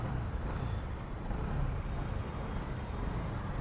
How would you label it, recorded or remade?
recorded